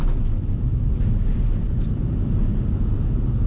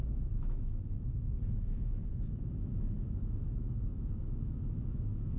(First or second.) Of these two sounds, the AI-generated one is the second